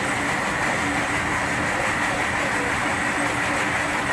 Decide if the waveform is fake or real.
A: real